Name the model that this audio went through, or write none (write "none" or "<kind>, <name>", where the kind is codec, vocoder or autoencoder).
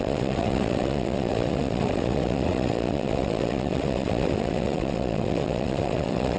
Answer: vocoder, WaveNeXt